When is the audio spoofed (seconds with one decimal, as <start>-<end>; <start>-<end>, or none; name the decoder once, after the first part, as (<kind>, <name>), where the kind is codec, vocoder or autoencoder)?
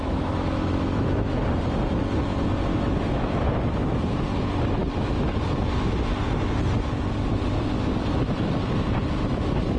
0.0-1.4 (autoencoder, DAC-VAE); 2.7-3.5